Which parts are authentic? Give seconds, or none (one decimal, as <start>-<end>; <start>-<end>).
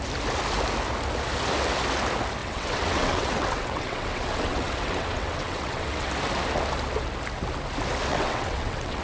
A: 0.0-2.4; 6.1-8.1